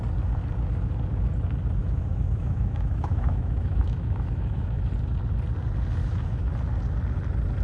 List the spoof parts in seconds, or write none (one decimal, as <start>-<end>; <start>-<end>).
1.8-4.9; 6.0-6.5